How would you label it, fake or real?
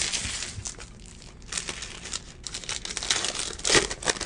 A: real